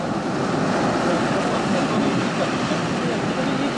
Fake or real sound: real